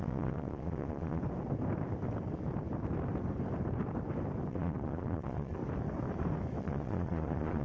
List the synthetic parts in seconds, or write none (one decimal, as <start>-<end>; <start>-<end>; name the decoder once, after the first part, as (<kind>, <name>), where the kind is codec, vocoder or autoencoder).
0.0-1.2 (vocoder, Vocos); 4.5-5.6; 6.6-7.6